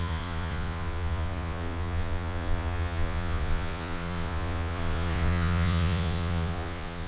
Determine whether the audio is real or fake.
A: fake